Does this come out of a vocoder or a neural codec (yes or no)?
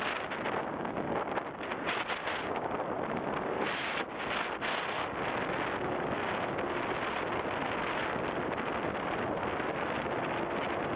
no